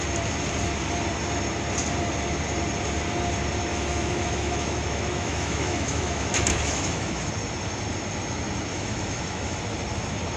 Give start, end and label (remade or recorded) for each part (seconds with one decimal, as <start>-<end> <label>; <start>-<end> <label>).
0.0-3.7 recorded; 3.7-7.3 remade; 7.3-8.7 recorded; 8.7-9.6 remade; 9.6-10.4 recorded

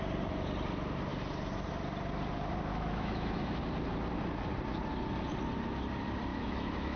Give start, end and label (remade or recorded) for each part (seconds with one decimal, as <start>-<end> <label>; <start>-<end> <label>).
0.0-2.7 recorded; 2.7-3.6 remade; 3.6-6.3 recorded; 6.3-7.0 remade

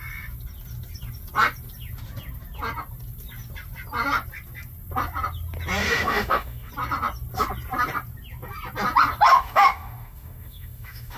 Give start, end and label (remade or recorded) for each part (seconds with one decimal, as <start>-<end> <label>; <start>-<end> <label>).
0.0-5.8 recorded; 5.8-6.7 remade; 6.7-9.3 recorded; 9.3-11.2 remade

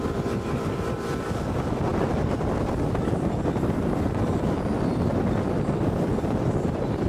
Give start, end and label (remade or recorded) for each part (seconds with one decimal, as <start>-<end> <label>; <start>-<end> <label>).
0.0-7.1 recorded

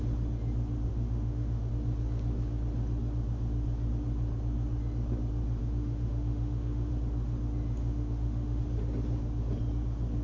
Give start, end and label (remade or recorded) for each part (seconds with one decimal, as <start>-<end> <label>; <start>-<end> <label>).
0.0-0.9 recorded; 0.9-1.7 remade; 1.7-5.6 recorded; 5.6-6.9 remade; 6.9-7.8 recorded; 7.8-8.6 remade; 8.6-10.2 recorded

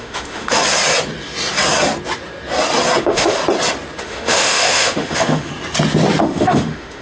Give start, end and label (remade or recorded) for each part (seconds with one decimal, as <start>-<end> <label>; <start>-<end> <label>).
0.0-0.6 remade; 0.6-3.0 recorded; 3.0-3.4 remade; 3.4-4.0 recorded; 4.0-5.5 remade; 5.5-6.2 recorded; 6.2-7.0 remade